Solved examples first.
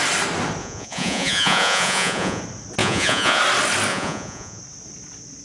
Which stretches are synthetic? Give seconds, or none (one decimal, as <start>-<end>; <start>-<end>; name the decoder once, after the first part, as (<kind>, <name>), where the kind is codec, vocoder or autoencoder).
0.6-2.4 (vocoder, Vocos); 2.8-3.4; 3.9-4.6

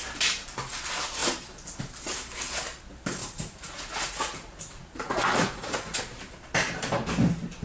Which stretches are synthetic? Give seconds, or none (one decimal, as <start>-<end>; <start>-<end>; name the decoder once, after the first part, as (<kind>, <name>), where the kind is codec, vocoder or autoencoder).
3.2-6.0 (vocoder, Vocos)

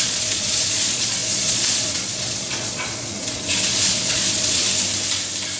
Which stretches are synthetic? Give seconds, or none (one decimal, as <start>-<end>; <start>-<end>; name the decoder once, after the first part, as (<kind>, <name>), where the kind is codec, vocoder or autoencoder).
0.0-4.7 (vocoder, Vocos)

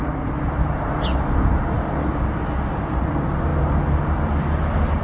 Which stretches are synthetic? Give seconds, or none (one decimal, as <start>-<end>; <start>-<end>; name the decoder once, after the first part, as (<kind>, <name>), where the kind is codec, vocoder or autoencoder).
none

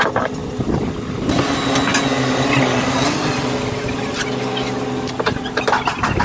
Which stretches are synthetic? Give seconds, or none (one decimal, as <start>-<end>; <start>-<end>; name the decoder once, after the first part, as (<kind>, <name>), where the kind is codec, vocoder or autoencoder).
none